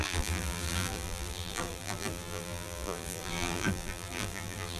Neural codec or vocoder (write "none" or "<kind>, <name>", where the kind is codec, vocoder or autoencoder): vocoder, BigVGAN v2